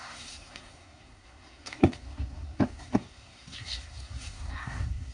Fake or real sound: fake